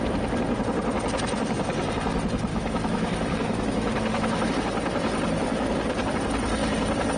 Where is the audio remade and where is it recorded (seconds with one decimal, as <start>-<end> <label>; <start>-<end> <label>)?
0.0-2.5 recorded; 2.5-4.5 remade; 4.5-7.2 recorded